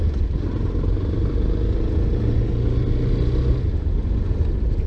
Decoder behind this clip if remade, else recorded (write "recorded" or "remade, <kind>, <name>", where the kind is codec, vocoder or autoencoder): recorded